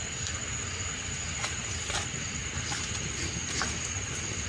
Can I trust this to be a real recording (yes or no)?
yes